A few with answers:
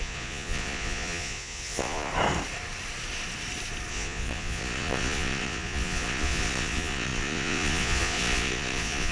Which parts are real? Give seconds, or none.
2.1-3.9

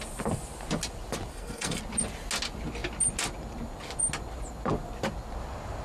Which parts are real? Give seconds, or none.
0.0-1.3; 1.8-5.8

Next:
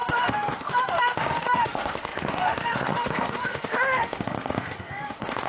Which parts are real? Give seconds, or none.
none

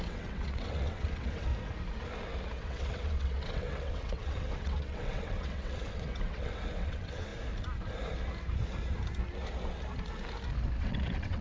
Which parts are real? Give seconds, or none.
1.5-2.6; 7.3-10.8

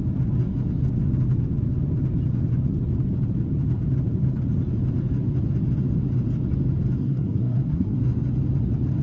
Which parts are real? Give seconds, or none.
0.0-7.0; 8.0-9.0

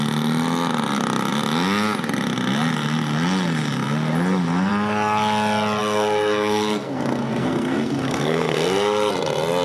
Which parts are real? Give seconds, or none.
0.0-5.8; 9.1-9.6

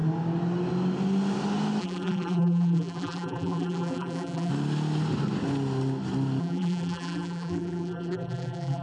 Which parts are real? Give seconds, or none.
0.0-1.8; 4.5-6.4